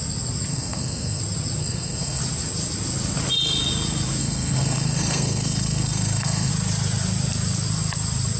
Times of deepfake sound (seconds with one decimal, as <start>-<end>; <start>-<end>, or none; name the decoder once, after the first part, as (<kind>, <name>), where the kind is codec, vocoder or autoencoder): 0.5-1.2 (codec, SNAC); 1.6-2.2; 4.2-6.5